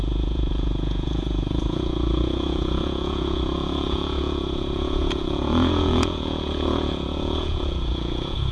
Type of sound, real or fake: fake